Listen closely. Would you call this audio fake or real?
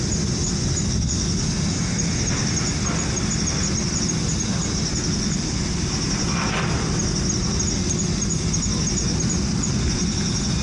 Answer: real